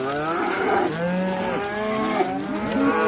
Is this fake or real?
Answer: real